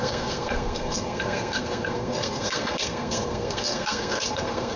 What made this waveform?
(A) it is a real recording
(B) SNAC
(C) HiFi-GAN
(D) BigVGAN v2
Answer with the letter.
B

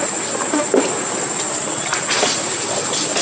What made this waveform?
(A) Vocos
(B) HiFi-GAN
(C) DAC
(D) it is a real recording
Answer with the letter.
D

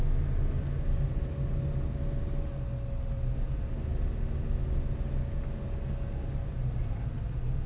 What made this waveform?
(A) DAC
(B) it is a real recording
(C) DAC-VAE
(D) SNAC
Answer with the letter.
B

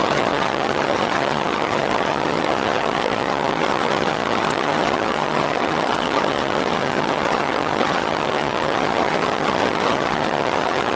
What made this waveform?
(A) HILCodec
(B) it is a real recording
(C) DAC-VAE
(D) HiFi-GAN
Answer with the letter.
D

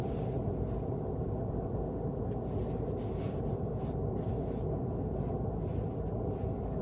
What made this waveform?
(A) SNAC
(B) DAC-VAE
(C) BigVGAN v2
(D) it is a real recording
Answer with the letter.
D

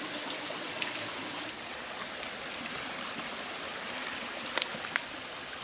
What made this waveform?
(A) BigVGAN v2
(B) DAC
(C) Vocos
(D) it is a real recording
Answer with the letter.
A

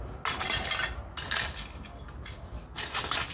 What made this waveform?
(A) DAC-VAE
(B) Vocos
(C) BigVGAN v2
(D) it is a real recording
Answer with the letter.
D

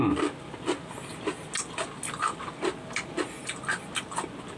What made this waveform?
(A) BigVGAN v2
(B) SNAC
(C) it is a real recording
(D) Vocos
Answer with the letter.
C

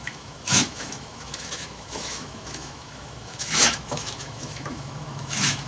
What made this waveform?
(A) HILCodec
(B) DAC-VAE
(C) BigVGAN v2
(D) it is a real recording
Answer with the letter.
B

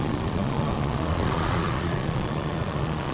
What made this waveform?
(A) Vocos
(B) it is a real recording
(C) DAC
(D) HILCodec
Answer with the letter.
A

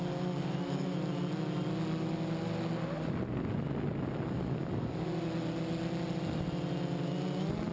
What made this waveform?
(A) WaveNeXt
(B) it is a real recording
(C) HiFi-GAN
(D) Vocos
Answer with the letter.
B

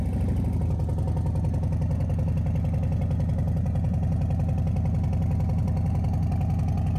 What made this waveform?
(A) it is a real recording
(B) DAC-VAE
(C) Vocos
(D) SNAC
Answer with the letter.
A